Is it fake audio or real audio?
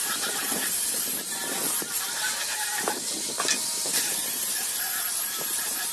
fake